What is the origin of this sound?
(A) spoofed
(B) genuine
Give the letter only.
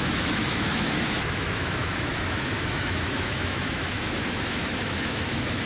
A